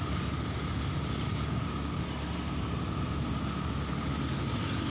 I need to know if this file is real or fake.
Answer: real